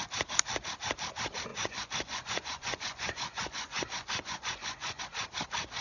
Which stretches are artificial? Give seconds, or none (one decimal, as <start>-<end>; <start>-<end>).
1.5-5.0